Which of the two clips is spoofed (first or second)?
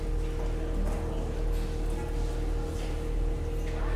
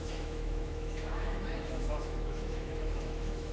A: second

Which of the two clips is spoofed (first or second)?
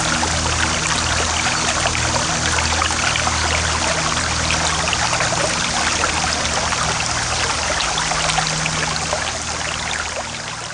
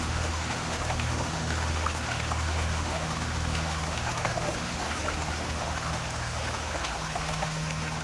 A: second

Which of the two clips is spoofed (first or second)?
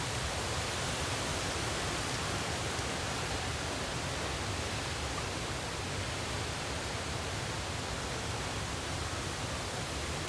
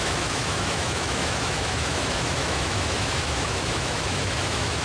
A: second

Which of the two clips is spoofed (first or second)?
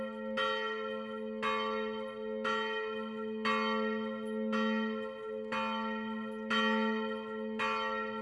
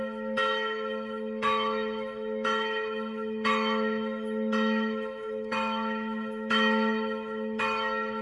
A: second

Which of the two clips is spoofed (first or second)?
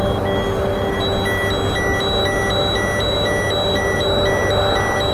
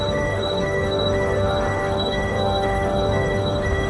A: second